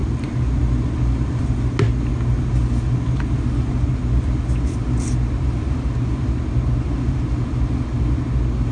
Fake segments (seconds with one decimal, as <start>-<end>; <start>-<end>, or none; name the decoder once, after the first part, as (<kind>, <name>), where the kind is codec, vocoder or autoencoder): none